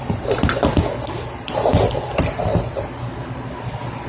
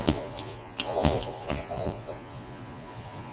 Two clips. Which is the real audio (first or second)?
first